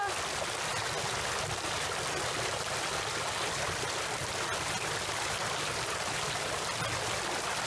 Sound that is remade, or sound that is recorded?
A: recorded